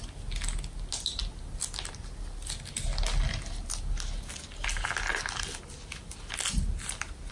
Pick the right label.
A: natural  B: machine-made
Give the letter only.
A